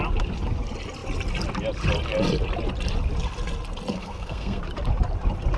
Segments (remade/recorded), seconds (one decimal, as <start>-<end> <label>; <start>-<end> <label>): 0.0-3.9 recorded; 3.9-4.6 remade; 4.6-5.6 recorded